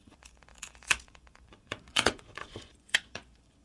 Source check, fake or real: fake